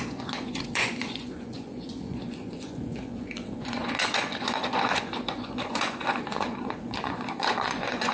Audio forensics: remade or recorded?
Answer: remade